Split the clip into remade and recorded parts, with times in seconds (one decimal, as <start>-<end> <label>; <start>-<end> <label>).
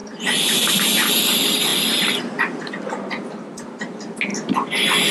0.0-1.1 remade; 1.1-5.1 recorded